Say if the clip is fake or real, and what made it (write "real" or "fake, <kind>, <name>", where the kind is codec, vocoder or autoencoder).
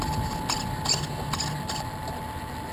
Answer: real